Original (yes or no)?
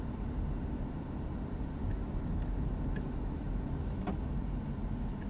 yes